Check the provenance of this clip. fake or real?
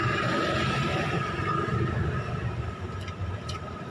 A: real